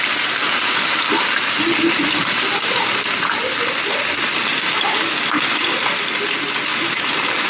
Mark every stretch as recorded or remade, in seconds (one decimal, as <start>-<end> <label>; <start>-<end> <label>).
0.0-7.5 recorded